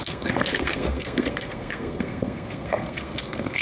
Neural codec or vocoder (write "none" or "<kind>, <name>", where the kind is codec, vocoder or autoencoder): codec, SNAC